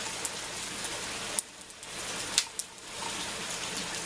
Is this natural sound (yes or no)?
yes